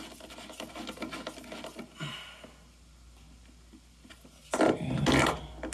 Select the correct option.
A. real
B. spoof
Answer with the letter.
A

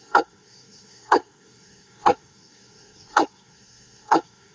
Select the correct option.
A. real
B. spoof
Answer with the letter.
B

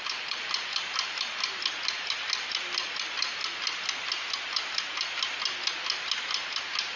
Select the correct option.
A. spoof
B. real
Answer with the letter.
B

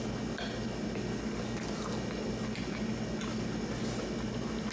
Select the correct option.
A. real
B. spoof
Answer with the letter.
A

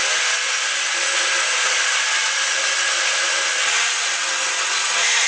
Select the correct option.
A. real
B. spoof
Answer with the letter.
A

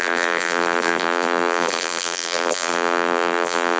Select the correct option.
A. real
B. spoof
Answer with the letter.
B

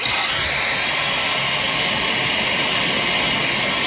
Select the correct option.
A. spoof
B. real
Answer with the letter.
B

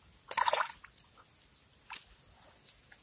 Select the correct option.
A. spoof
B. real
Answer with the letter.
B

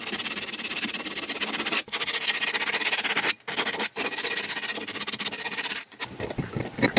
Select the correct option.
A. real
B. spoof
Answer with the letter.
A